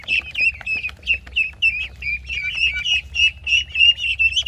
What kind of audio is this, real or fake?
real